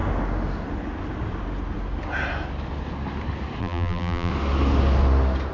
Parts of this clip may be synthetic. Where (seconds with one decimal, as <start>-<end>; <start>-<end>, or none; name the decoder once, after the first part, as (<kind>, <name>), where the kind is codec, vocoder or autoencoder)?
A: 3.6-4.3 (vocoder, BigVGAN v2)